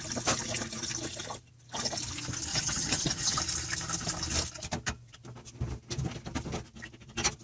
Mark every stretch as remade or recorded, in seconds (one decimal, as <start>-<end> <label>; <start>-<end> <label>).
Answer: 0.0-2.5 recorded; 2.5-3.4 remade; 3.4-7.4 recorded